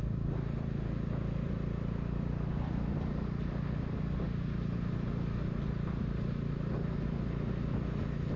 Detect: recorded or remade recorded